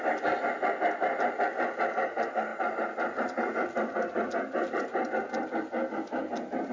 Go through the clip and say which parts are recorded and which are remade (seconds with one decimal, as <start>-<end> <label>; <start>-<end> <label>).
0.0-6.7 recorded